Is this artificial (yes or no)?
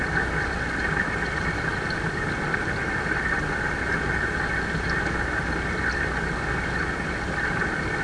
no